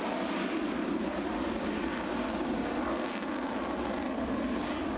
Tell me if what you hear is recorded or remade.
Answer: recorded